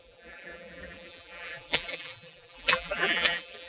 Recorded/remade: remade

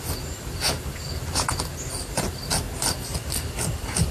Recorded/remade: recorded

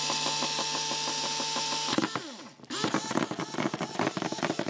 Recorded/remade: recorded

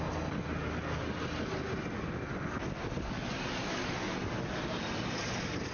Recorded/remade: recorded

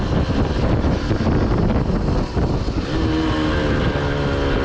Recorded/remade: recorded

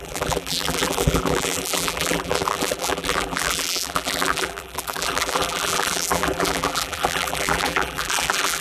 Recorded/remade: remade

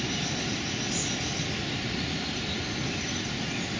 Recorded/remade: recorded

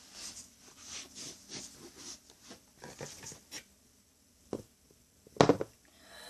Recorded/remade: recorded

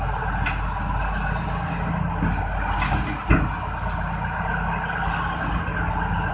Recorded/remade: recorded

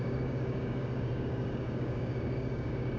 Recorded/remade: remade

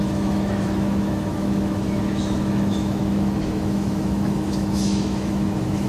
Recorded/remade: remade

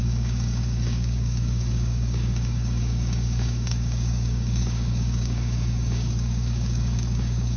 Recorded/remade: remade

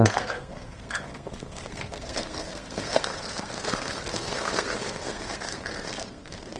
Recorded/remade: remade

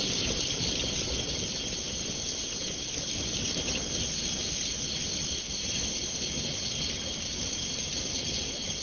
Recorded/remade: recorded